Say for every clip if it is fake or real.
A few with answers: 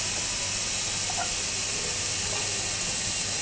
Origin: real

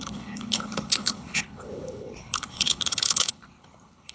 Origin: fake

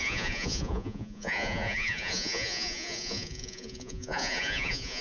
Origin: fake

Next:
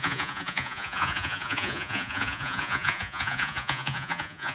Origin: fake